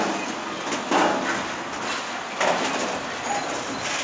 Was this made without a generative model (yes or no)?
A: yes